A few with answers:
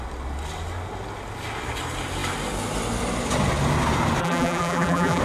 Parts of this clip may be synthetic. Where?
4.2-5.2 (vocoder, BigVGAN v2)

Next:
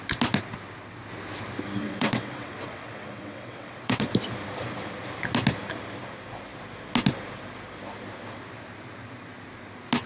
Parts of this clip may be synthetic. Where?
1.8-4.1 (vocoder, WaveNeXt)

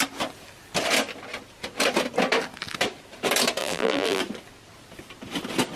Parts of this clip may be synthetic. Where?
3.6-4.2 (vocoder, BigVGAN v2)

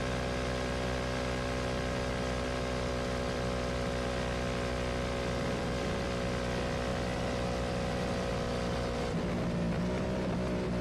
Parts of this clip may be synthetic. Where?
none

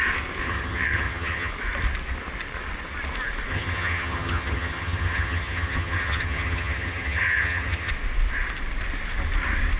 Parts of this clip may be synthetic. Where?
0.4-1.5 (vocoder, HiFi-GAN); 3.5-7.9

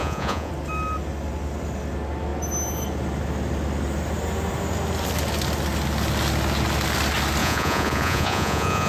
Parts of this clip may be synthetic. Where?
0.0-0.5 (vocoder, Vocos); 7.4-8.9